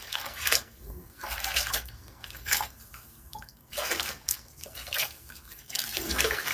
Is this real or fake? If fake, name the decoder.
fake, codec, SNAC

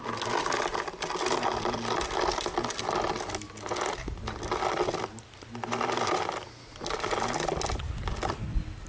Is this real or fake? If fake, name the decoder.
real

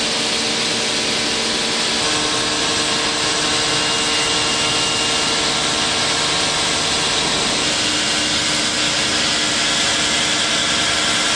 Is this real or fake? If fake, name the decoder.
real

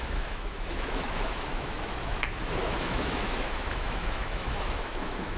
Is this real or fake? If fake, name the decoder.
fake, autoencoder, DAC-VAE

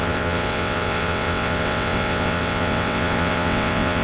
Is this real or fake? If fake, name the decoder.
fake, vocoder, WaveNeXt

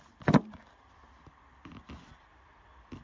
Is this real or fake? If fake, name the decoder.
fake, vocoder, BigVGAN v2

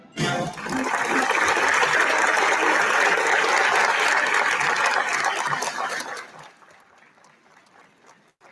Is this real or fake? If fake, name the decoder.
fake, vocoder, BigVGAN v2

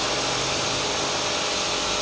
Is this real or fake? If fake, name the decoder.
real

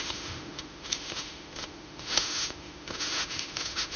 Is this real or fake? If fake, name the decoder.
fake, autoencoder, DAC-VAE